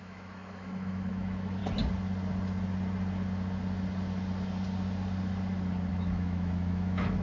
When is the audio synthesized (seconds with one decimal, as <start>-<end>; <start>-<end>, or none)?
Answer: 0.0-1.6; 5.9-7.2